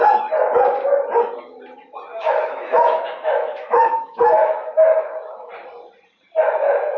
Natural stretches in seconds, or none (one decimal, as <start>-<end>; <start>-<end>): 0.0-2.1; 5.5-7.0